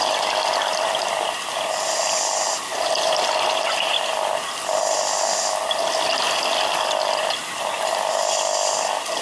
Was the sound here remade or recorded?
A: recorded